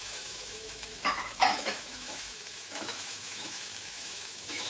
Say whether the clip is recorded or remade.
remade